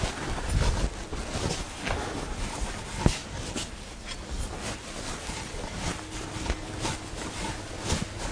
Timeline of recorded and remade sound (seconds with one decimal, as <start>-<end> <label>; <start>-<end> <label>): 0.0-8.3 recorded